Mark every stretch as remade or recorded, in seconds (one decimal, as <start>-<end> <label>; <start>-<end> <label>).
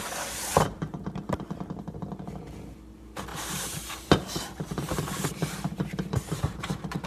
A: 0.0-3.3 recorded; 3.3-6.6 remade; 6.6-7.1 recorded